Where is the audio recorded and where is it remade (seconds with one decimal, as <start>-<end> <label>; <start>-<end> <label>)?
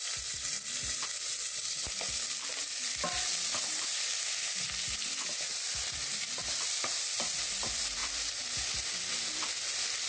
0.0-1.8 remade; 1.8-2.6 recorded; 2.6-4.1 remade; 4.1-4.7 recorded; 4.7-10.1 remade